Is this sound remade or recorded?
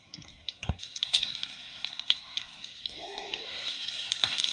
remade